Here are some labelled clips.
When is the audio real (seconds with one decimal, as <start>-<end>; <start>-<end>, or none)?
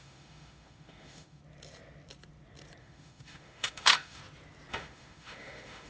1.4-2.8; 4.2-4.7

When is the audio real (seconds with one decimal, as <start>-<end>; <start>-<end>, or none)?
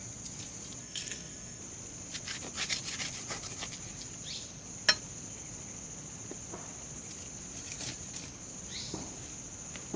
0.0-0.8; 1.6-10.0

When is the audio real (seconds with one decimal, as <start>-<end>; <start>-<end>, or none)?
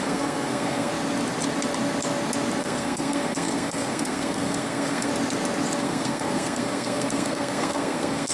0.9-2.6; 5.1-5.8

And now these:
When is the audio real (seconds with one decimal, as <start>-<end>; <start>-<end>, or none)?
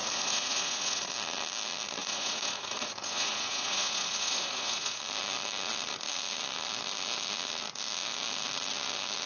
1.1-2.0; 5.0-9.3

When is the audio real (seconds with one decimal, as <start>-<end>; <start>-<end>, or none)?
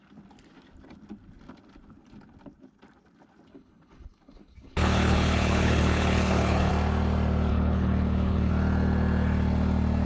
0.0-3.5; 6.7-7.5; 8.5-10.1